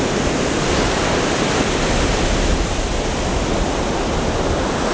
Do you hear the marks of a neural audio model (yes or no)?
no